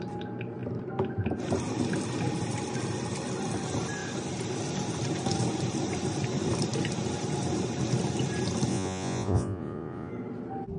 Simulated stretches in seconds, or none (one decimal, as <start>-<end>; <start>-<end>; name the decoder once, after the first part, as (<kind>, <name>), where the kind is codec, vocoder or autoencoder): 8.7-10.1 (vocoder, Vocos)